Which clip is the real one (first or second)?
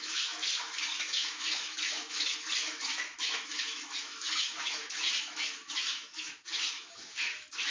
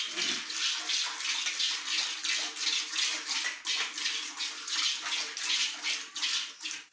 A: second